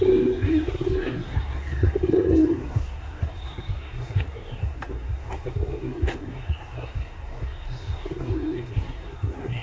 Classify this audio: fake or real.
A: fake